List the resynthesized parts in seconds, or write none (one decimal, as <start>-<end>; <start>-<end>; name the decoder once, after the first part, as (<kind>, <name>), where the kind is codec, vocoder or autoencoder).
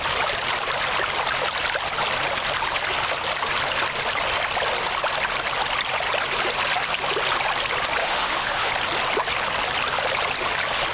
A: 8.0-8.7 (autoencoder, DAC-VAE)